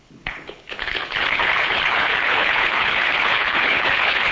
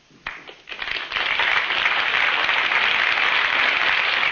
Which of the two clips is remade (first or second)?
first